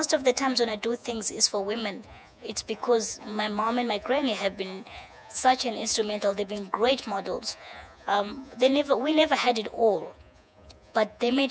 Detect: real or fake fake